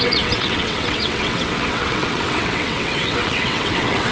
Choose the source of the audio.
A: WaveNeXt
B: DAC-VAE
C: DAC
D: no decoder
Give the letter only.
A